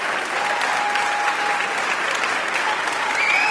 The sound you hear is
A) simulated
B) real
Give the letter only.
B